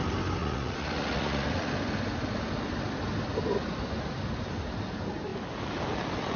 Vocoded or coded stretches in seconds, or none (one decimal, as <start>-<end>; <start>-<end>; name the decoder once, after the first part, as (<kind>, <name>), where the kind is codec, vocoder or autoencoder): 0.4-1.7 (vocoder, Vocos)